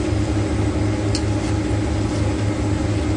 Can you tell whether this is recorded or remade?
recorded